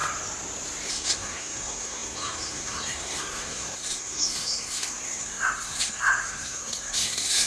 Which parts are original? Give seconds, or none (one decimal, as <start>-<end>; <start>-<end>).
0.0-0.9